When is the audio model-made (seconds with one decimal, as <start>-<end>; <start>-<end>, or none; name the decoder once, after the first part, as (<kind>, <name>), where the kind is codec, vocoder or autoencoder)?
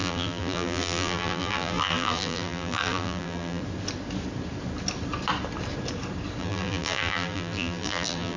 0.0-3.6 (vocoder, BigVGAN v2); 6.4-8.4